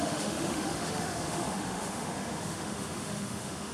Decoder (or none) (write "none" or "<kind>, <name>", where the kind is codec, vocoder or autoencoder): autoencoder, DAC-VAE